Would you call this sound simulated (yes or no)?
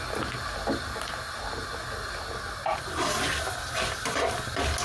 no